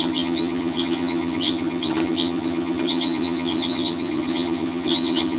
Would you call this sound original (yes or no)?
no